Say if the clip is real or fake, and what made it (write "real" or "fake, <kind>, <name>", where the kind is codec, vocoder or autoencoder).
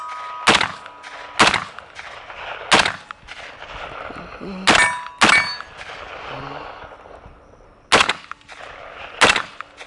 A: real